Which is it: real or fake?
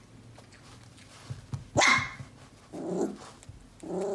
real